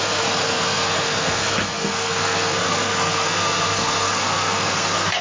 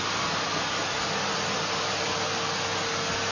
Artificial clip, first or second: first